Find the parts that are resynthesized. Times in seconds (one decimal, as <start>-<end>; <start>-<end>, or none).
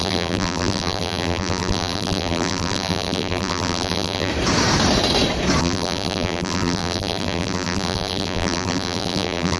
0.0-4.3; 5.6-9.6